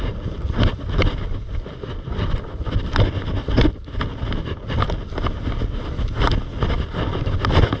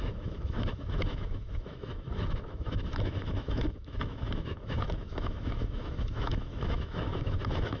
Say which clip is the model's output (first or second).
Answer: second